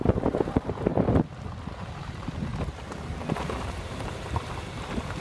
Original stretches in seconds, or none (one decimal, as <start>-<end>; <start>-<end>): 0.9-1.8; 2.5-3.7